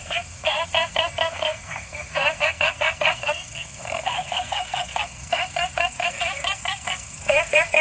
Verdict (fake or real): fake